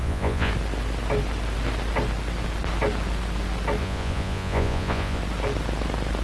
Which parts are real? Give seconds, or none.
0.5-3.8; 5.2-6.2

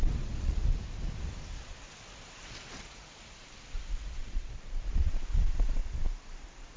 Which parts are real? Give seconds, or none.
0.6-2.0; 5.8-6.8

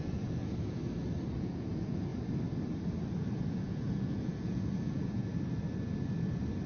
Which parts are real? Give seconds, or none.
0.8-1.4; 2.1-3.5; 5.3-6.7

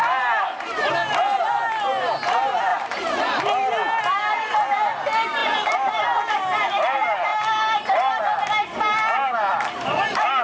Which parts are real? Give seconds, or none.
0.0-10.4

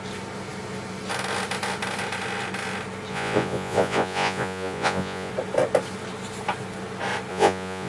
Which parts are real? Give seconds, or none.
0.0-3.1; 5.3-7.3

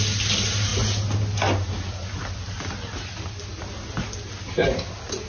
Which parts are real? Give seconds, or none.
0.0-5.3